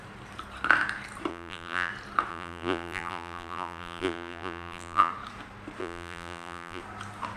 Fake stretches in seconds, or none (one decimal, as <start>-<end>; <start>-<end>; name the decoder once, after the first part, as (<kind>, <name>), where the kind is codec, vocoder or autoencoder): 1.3-1.9 (vocoder, BigVGAN v2); 2.3-5.1; 5.8-6.8

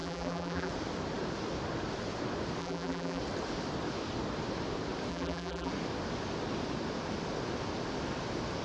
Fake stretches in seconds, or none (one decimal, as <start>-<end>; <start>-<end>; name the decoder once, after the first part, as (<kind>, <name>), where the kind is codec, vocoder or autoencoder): 0.0-0.7 (vocoder, BigVGAN v2); 2.6-3.2; 5.1-5.7

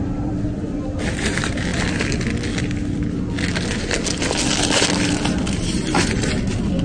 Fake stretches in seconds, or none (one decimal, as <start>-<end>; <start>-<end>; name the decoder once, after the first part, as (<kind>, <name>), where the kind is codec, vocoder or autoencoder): none

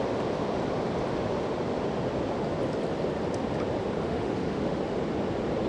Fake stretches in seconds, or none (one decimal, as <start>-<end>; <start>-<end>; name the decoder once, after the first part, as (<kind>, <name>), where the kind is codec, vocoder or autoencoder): 4.0-4.8 (autoencoder, DAC-VAE)

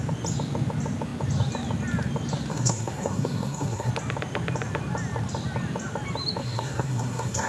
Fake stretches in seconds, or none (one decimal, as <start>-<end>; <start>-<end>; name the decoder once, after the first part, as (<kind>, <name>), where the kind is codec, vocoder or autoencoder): 2.5-3.9 (codec, SNAC); 6.4-7.5

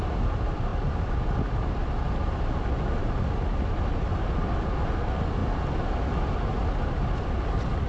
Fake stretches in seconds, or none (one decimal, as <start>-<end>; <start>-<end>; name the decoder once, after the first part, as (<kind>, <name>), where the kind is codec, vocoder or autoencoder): none